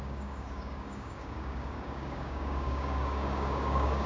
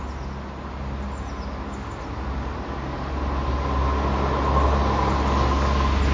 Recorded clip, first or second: second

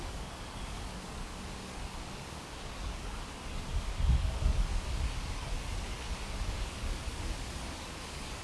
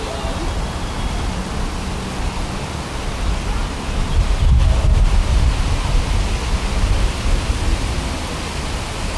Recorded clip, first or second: second